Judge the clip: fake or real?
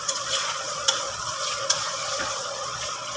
fake